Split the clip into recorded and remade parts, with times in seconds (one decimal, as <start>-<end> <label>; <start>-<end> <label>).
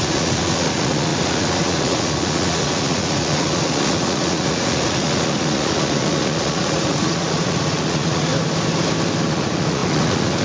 0.0-8.3 remade; 8.3-9.2 recorded; 9.2-10.4 remade